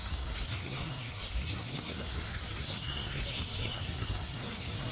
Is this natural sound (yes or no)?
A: no